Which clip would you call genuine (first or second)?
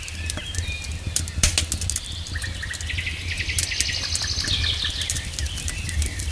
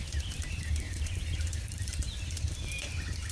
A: first